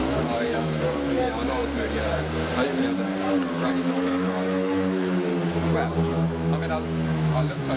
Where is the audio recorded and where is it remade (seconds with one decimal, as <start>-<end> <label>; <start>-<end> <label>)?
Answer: 0.0-1.6 remade; 1.6-3.7 recorded; 3.7-5.3 remade; 5.3-6.1 recorded; 6.1-7.8 remade